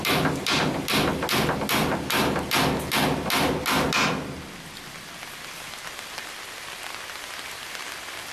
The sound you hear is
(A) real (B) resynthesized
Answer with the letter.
A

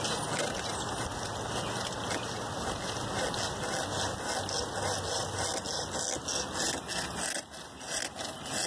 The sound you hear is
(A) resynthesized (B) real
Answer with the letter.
B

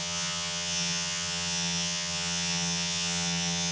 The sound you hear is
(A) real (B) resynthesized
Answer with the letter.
B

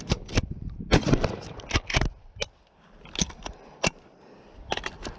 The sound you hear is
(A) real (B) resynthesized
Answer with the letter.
A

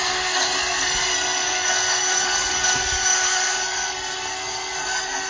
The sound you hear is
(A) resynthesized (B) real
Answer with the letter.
A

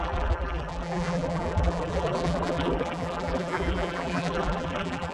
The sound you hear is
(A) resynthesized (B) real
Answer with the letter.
A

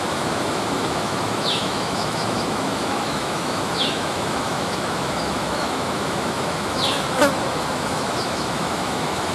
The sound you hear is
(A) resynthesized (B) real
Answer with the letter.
A